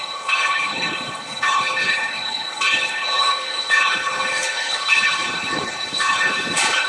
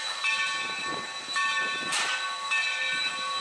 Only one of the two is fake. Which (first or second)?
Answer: first